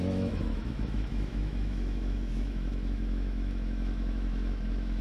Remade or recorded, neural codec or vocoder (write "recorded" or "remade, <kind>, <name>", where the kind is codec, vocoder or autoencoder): remade, autoencoder, DAC-VAE